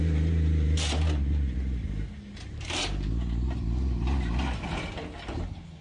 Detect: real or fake real